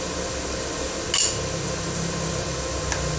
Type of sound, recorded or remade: recorded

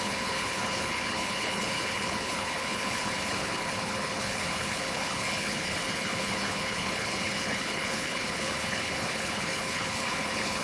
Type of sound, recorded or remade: remade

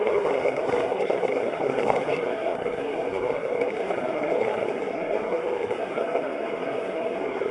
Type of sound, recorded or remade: remade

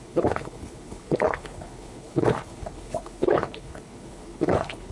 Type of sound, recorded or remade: remade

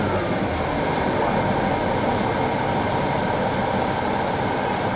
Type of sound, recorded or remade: remade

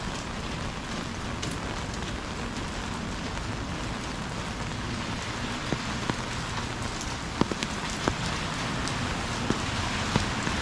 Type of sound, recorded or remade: recorded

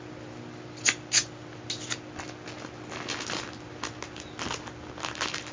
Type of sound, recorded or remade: recorded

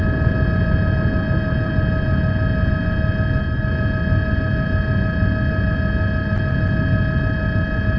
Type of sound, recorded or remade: recorded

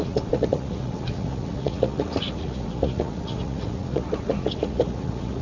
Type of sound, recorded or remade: remade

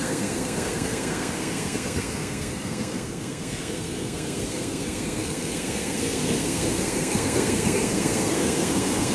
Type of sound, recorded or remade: remade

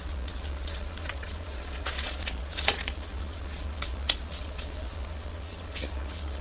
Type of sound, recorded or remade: remade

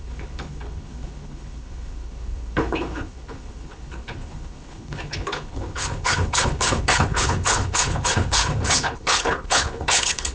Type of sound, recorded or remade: remade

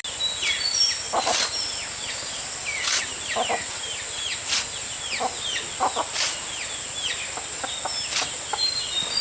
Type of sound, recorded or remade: recorded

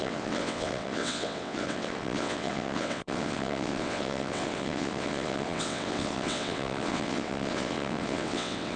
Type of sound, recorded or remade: remade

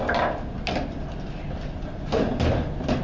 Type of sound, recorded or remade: recorded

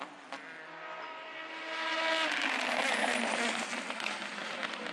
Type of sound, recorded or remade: recorded